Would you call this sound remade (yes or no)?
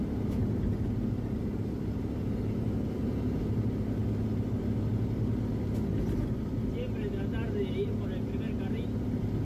no